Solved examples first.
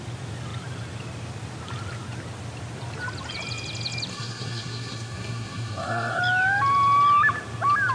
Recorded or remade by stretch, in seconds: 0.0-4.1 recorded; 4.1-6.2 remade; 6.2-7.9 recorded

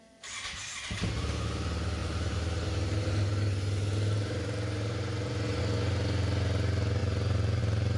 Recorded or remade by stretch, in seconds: 0.0-2.0 recorded; 2.0-5.6 remade; 5.6-7.0 recorded; 7.0-7.6 remade; 7.6-8.0 recorded

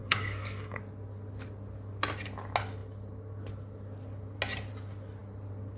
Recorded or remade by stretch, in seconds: 0.0-0.8 remade; 0.8-5.8 recorded

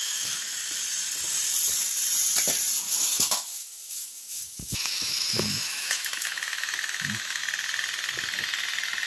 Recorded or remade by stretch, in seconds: 0.0-0.6 remade; 0.6-2.8 recorded; 2.8-7.4 remade; 7.4-9.1 recorded

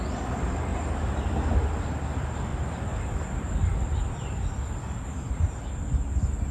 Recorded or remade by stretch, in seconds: 0.0-6.5 recorded

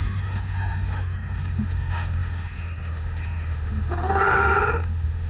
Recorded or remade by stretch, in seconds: 0.0-5.3 remade

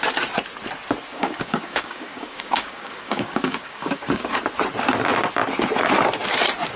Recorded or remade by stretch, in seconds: 0.0-1.1 recorded; 1.1-4.4 remade; 4.4-6.8 recorded